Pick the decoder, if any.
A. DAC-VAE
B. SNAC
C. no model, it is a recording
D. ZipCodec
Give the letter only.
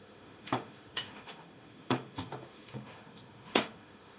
A